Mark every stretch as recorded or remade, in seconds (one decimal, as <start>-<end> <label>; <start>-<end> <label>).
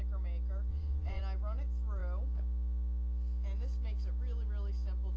0.0-0.7 recorded; 0.7-1.2 remade; 1.2-5.2 recorded